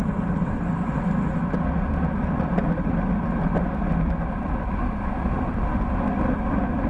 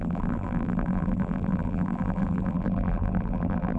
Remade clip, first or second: second